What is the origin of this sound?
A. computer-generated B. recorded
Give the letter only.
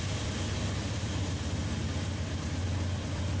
B